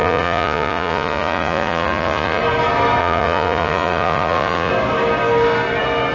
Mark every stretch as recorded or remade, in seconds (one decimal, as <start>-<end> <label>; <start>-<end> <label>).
0.0-2.4 remade; 2.4-3.0 recorded; 3.0-4.7 remade; 4.7-6.1 recorded